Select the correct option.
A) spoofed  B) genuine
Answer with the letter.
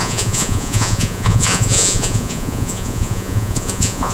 A